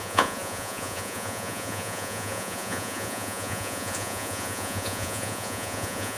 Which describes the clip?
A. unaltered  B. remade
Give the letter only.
B